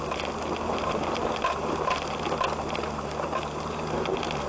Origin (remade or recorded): recorded